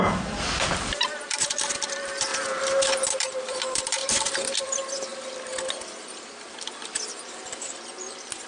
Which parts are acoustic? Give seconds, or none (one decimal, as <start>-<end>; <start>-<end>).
2.3-3.2; 5.1-5.7